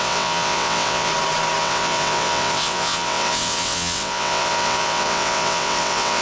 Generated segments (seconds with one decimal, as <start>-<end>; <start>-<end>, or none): 0.0-1.1; 1.6-6.2